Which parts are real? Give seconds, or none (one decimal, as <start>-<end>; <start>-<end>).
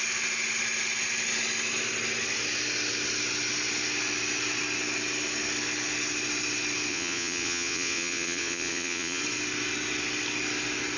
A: 0.0-6.9; 9.2-11.0